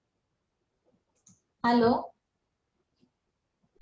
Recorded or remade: recorded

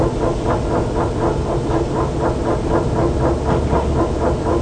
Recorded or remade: recorded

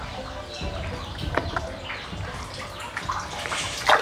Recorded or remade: recorded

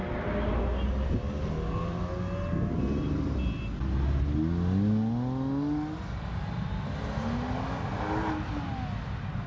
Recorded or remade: recorded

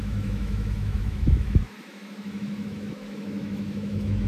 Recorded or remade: remade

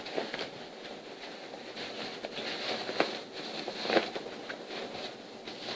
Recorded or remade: recorded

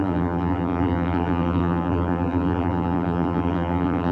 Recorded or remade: remade